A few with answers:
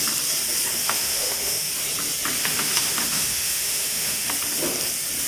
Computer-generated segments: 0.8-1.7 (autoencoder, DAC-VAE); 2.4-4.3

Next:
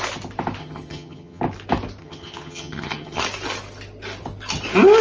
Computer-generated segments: 0.6-1.4 (vocoder, HiFi-GAN); 2.0-3.2

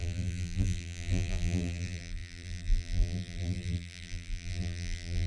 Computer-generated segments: 0.0-5.3 (vocoder, BigVGAN v2)

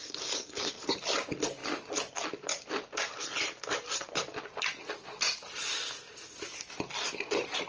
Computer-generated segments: none

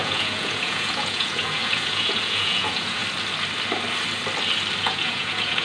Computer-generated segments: 0.0-3.0 (vocoder, Vocos); 4.8-5.6

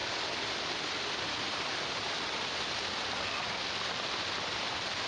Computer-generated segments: none

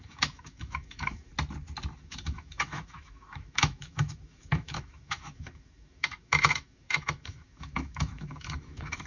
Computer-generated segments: 0.0-1.3 (autoencoder, DAC-VAE); 2.0-9.1